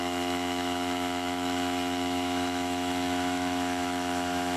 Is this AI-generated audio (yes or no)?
yes